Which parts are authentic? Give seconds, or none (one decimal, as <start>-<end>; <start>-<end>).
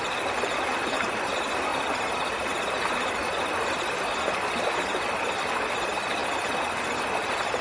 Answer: 0.0-7.6